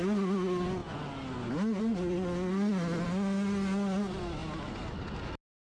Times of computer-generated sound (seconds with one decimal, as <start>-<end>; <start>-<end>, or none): none